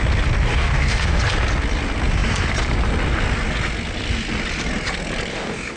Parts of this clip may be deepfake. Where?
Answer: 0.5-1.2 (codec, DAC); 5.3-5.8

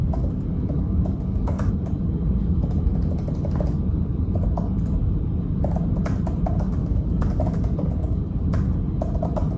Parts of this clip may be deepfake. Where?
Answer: 0.0-1.7 (codec, DAC); 6.8-8.2

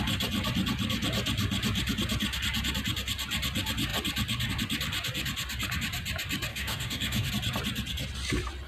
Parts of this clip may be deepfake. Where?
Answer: 6.5-7.3 (codec, DAC)

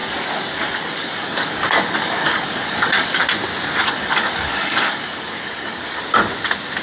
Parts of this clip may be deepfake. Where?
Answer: 0.0-3.2 (codec, DAC); 3.8-6.0

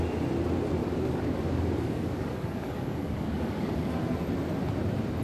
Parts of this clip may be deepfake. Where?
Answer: 0.8-3.9 (codec, DAC)

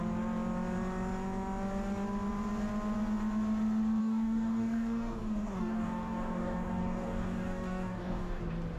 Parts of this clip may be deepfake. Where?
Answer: 4.0-8.4 (codec, DAC)

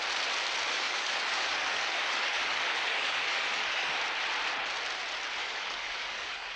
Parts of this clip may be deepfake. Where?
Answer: 0.7-4.0 (codec, DAC); 5.4-6.6

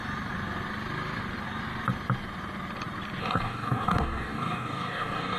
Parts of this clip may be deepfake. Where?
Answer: 3.2-5.4 (codec, DAC)